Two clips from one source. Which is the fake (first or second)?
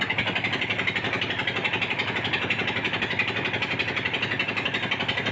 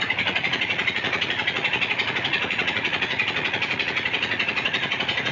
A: second